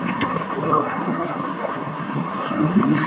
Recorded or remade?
remade